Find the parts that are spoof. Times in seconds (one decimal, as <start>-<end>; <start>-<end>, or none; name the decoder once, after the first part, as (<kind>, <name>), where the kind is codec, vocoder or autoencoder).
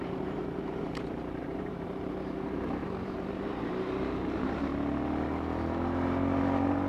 0.0-4.7 (vocoder, BigVGAN v2)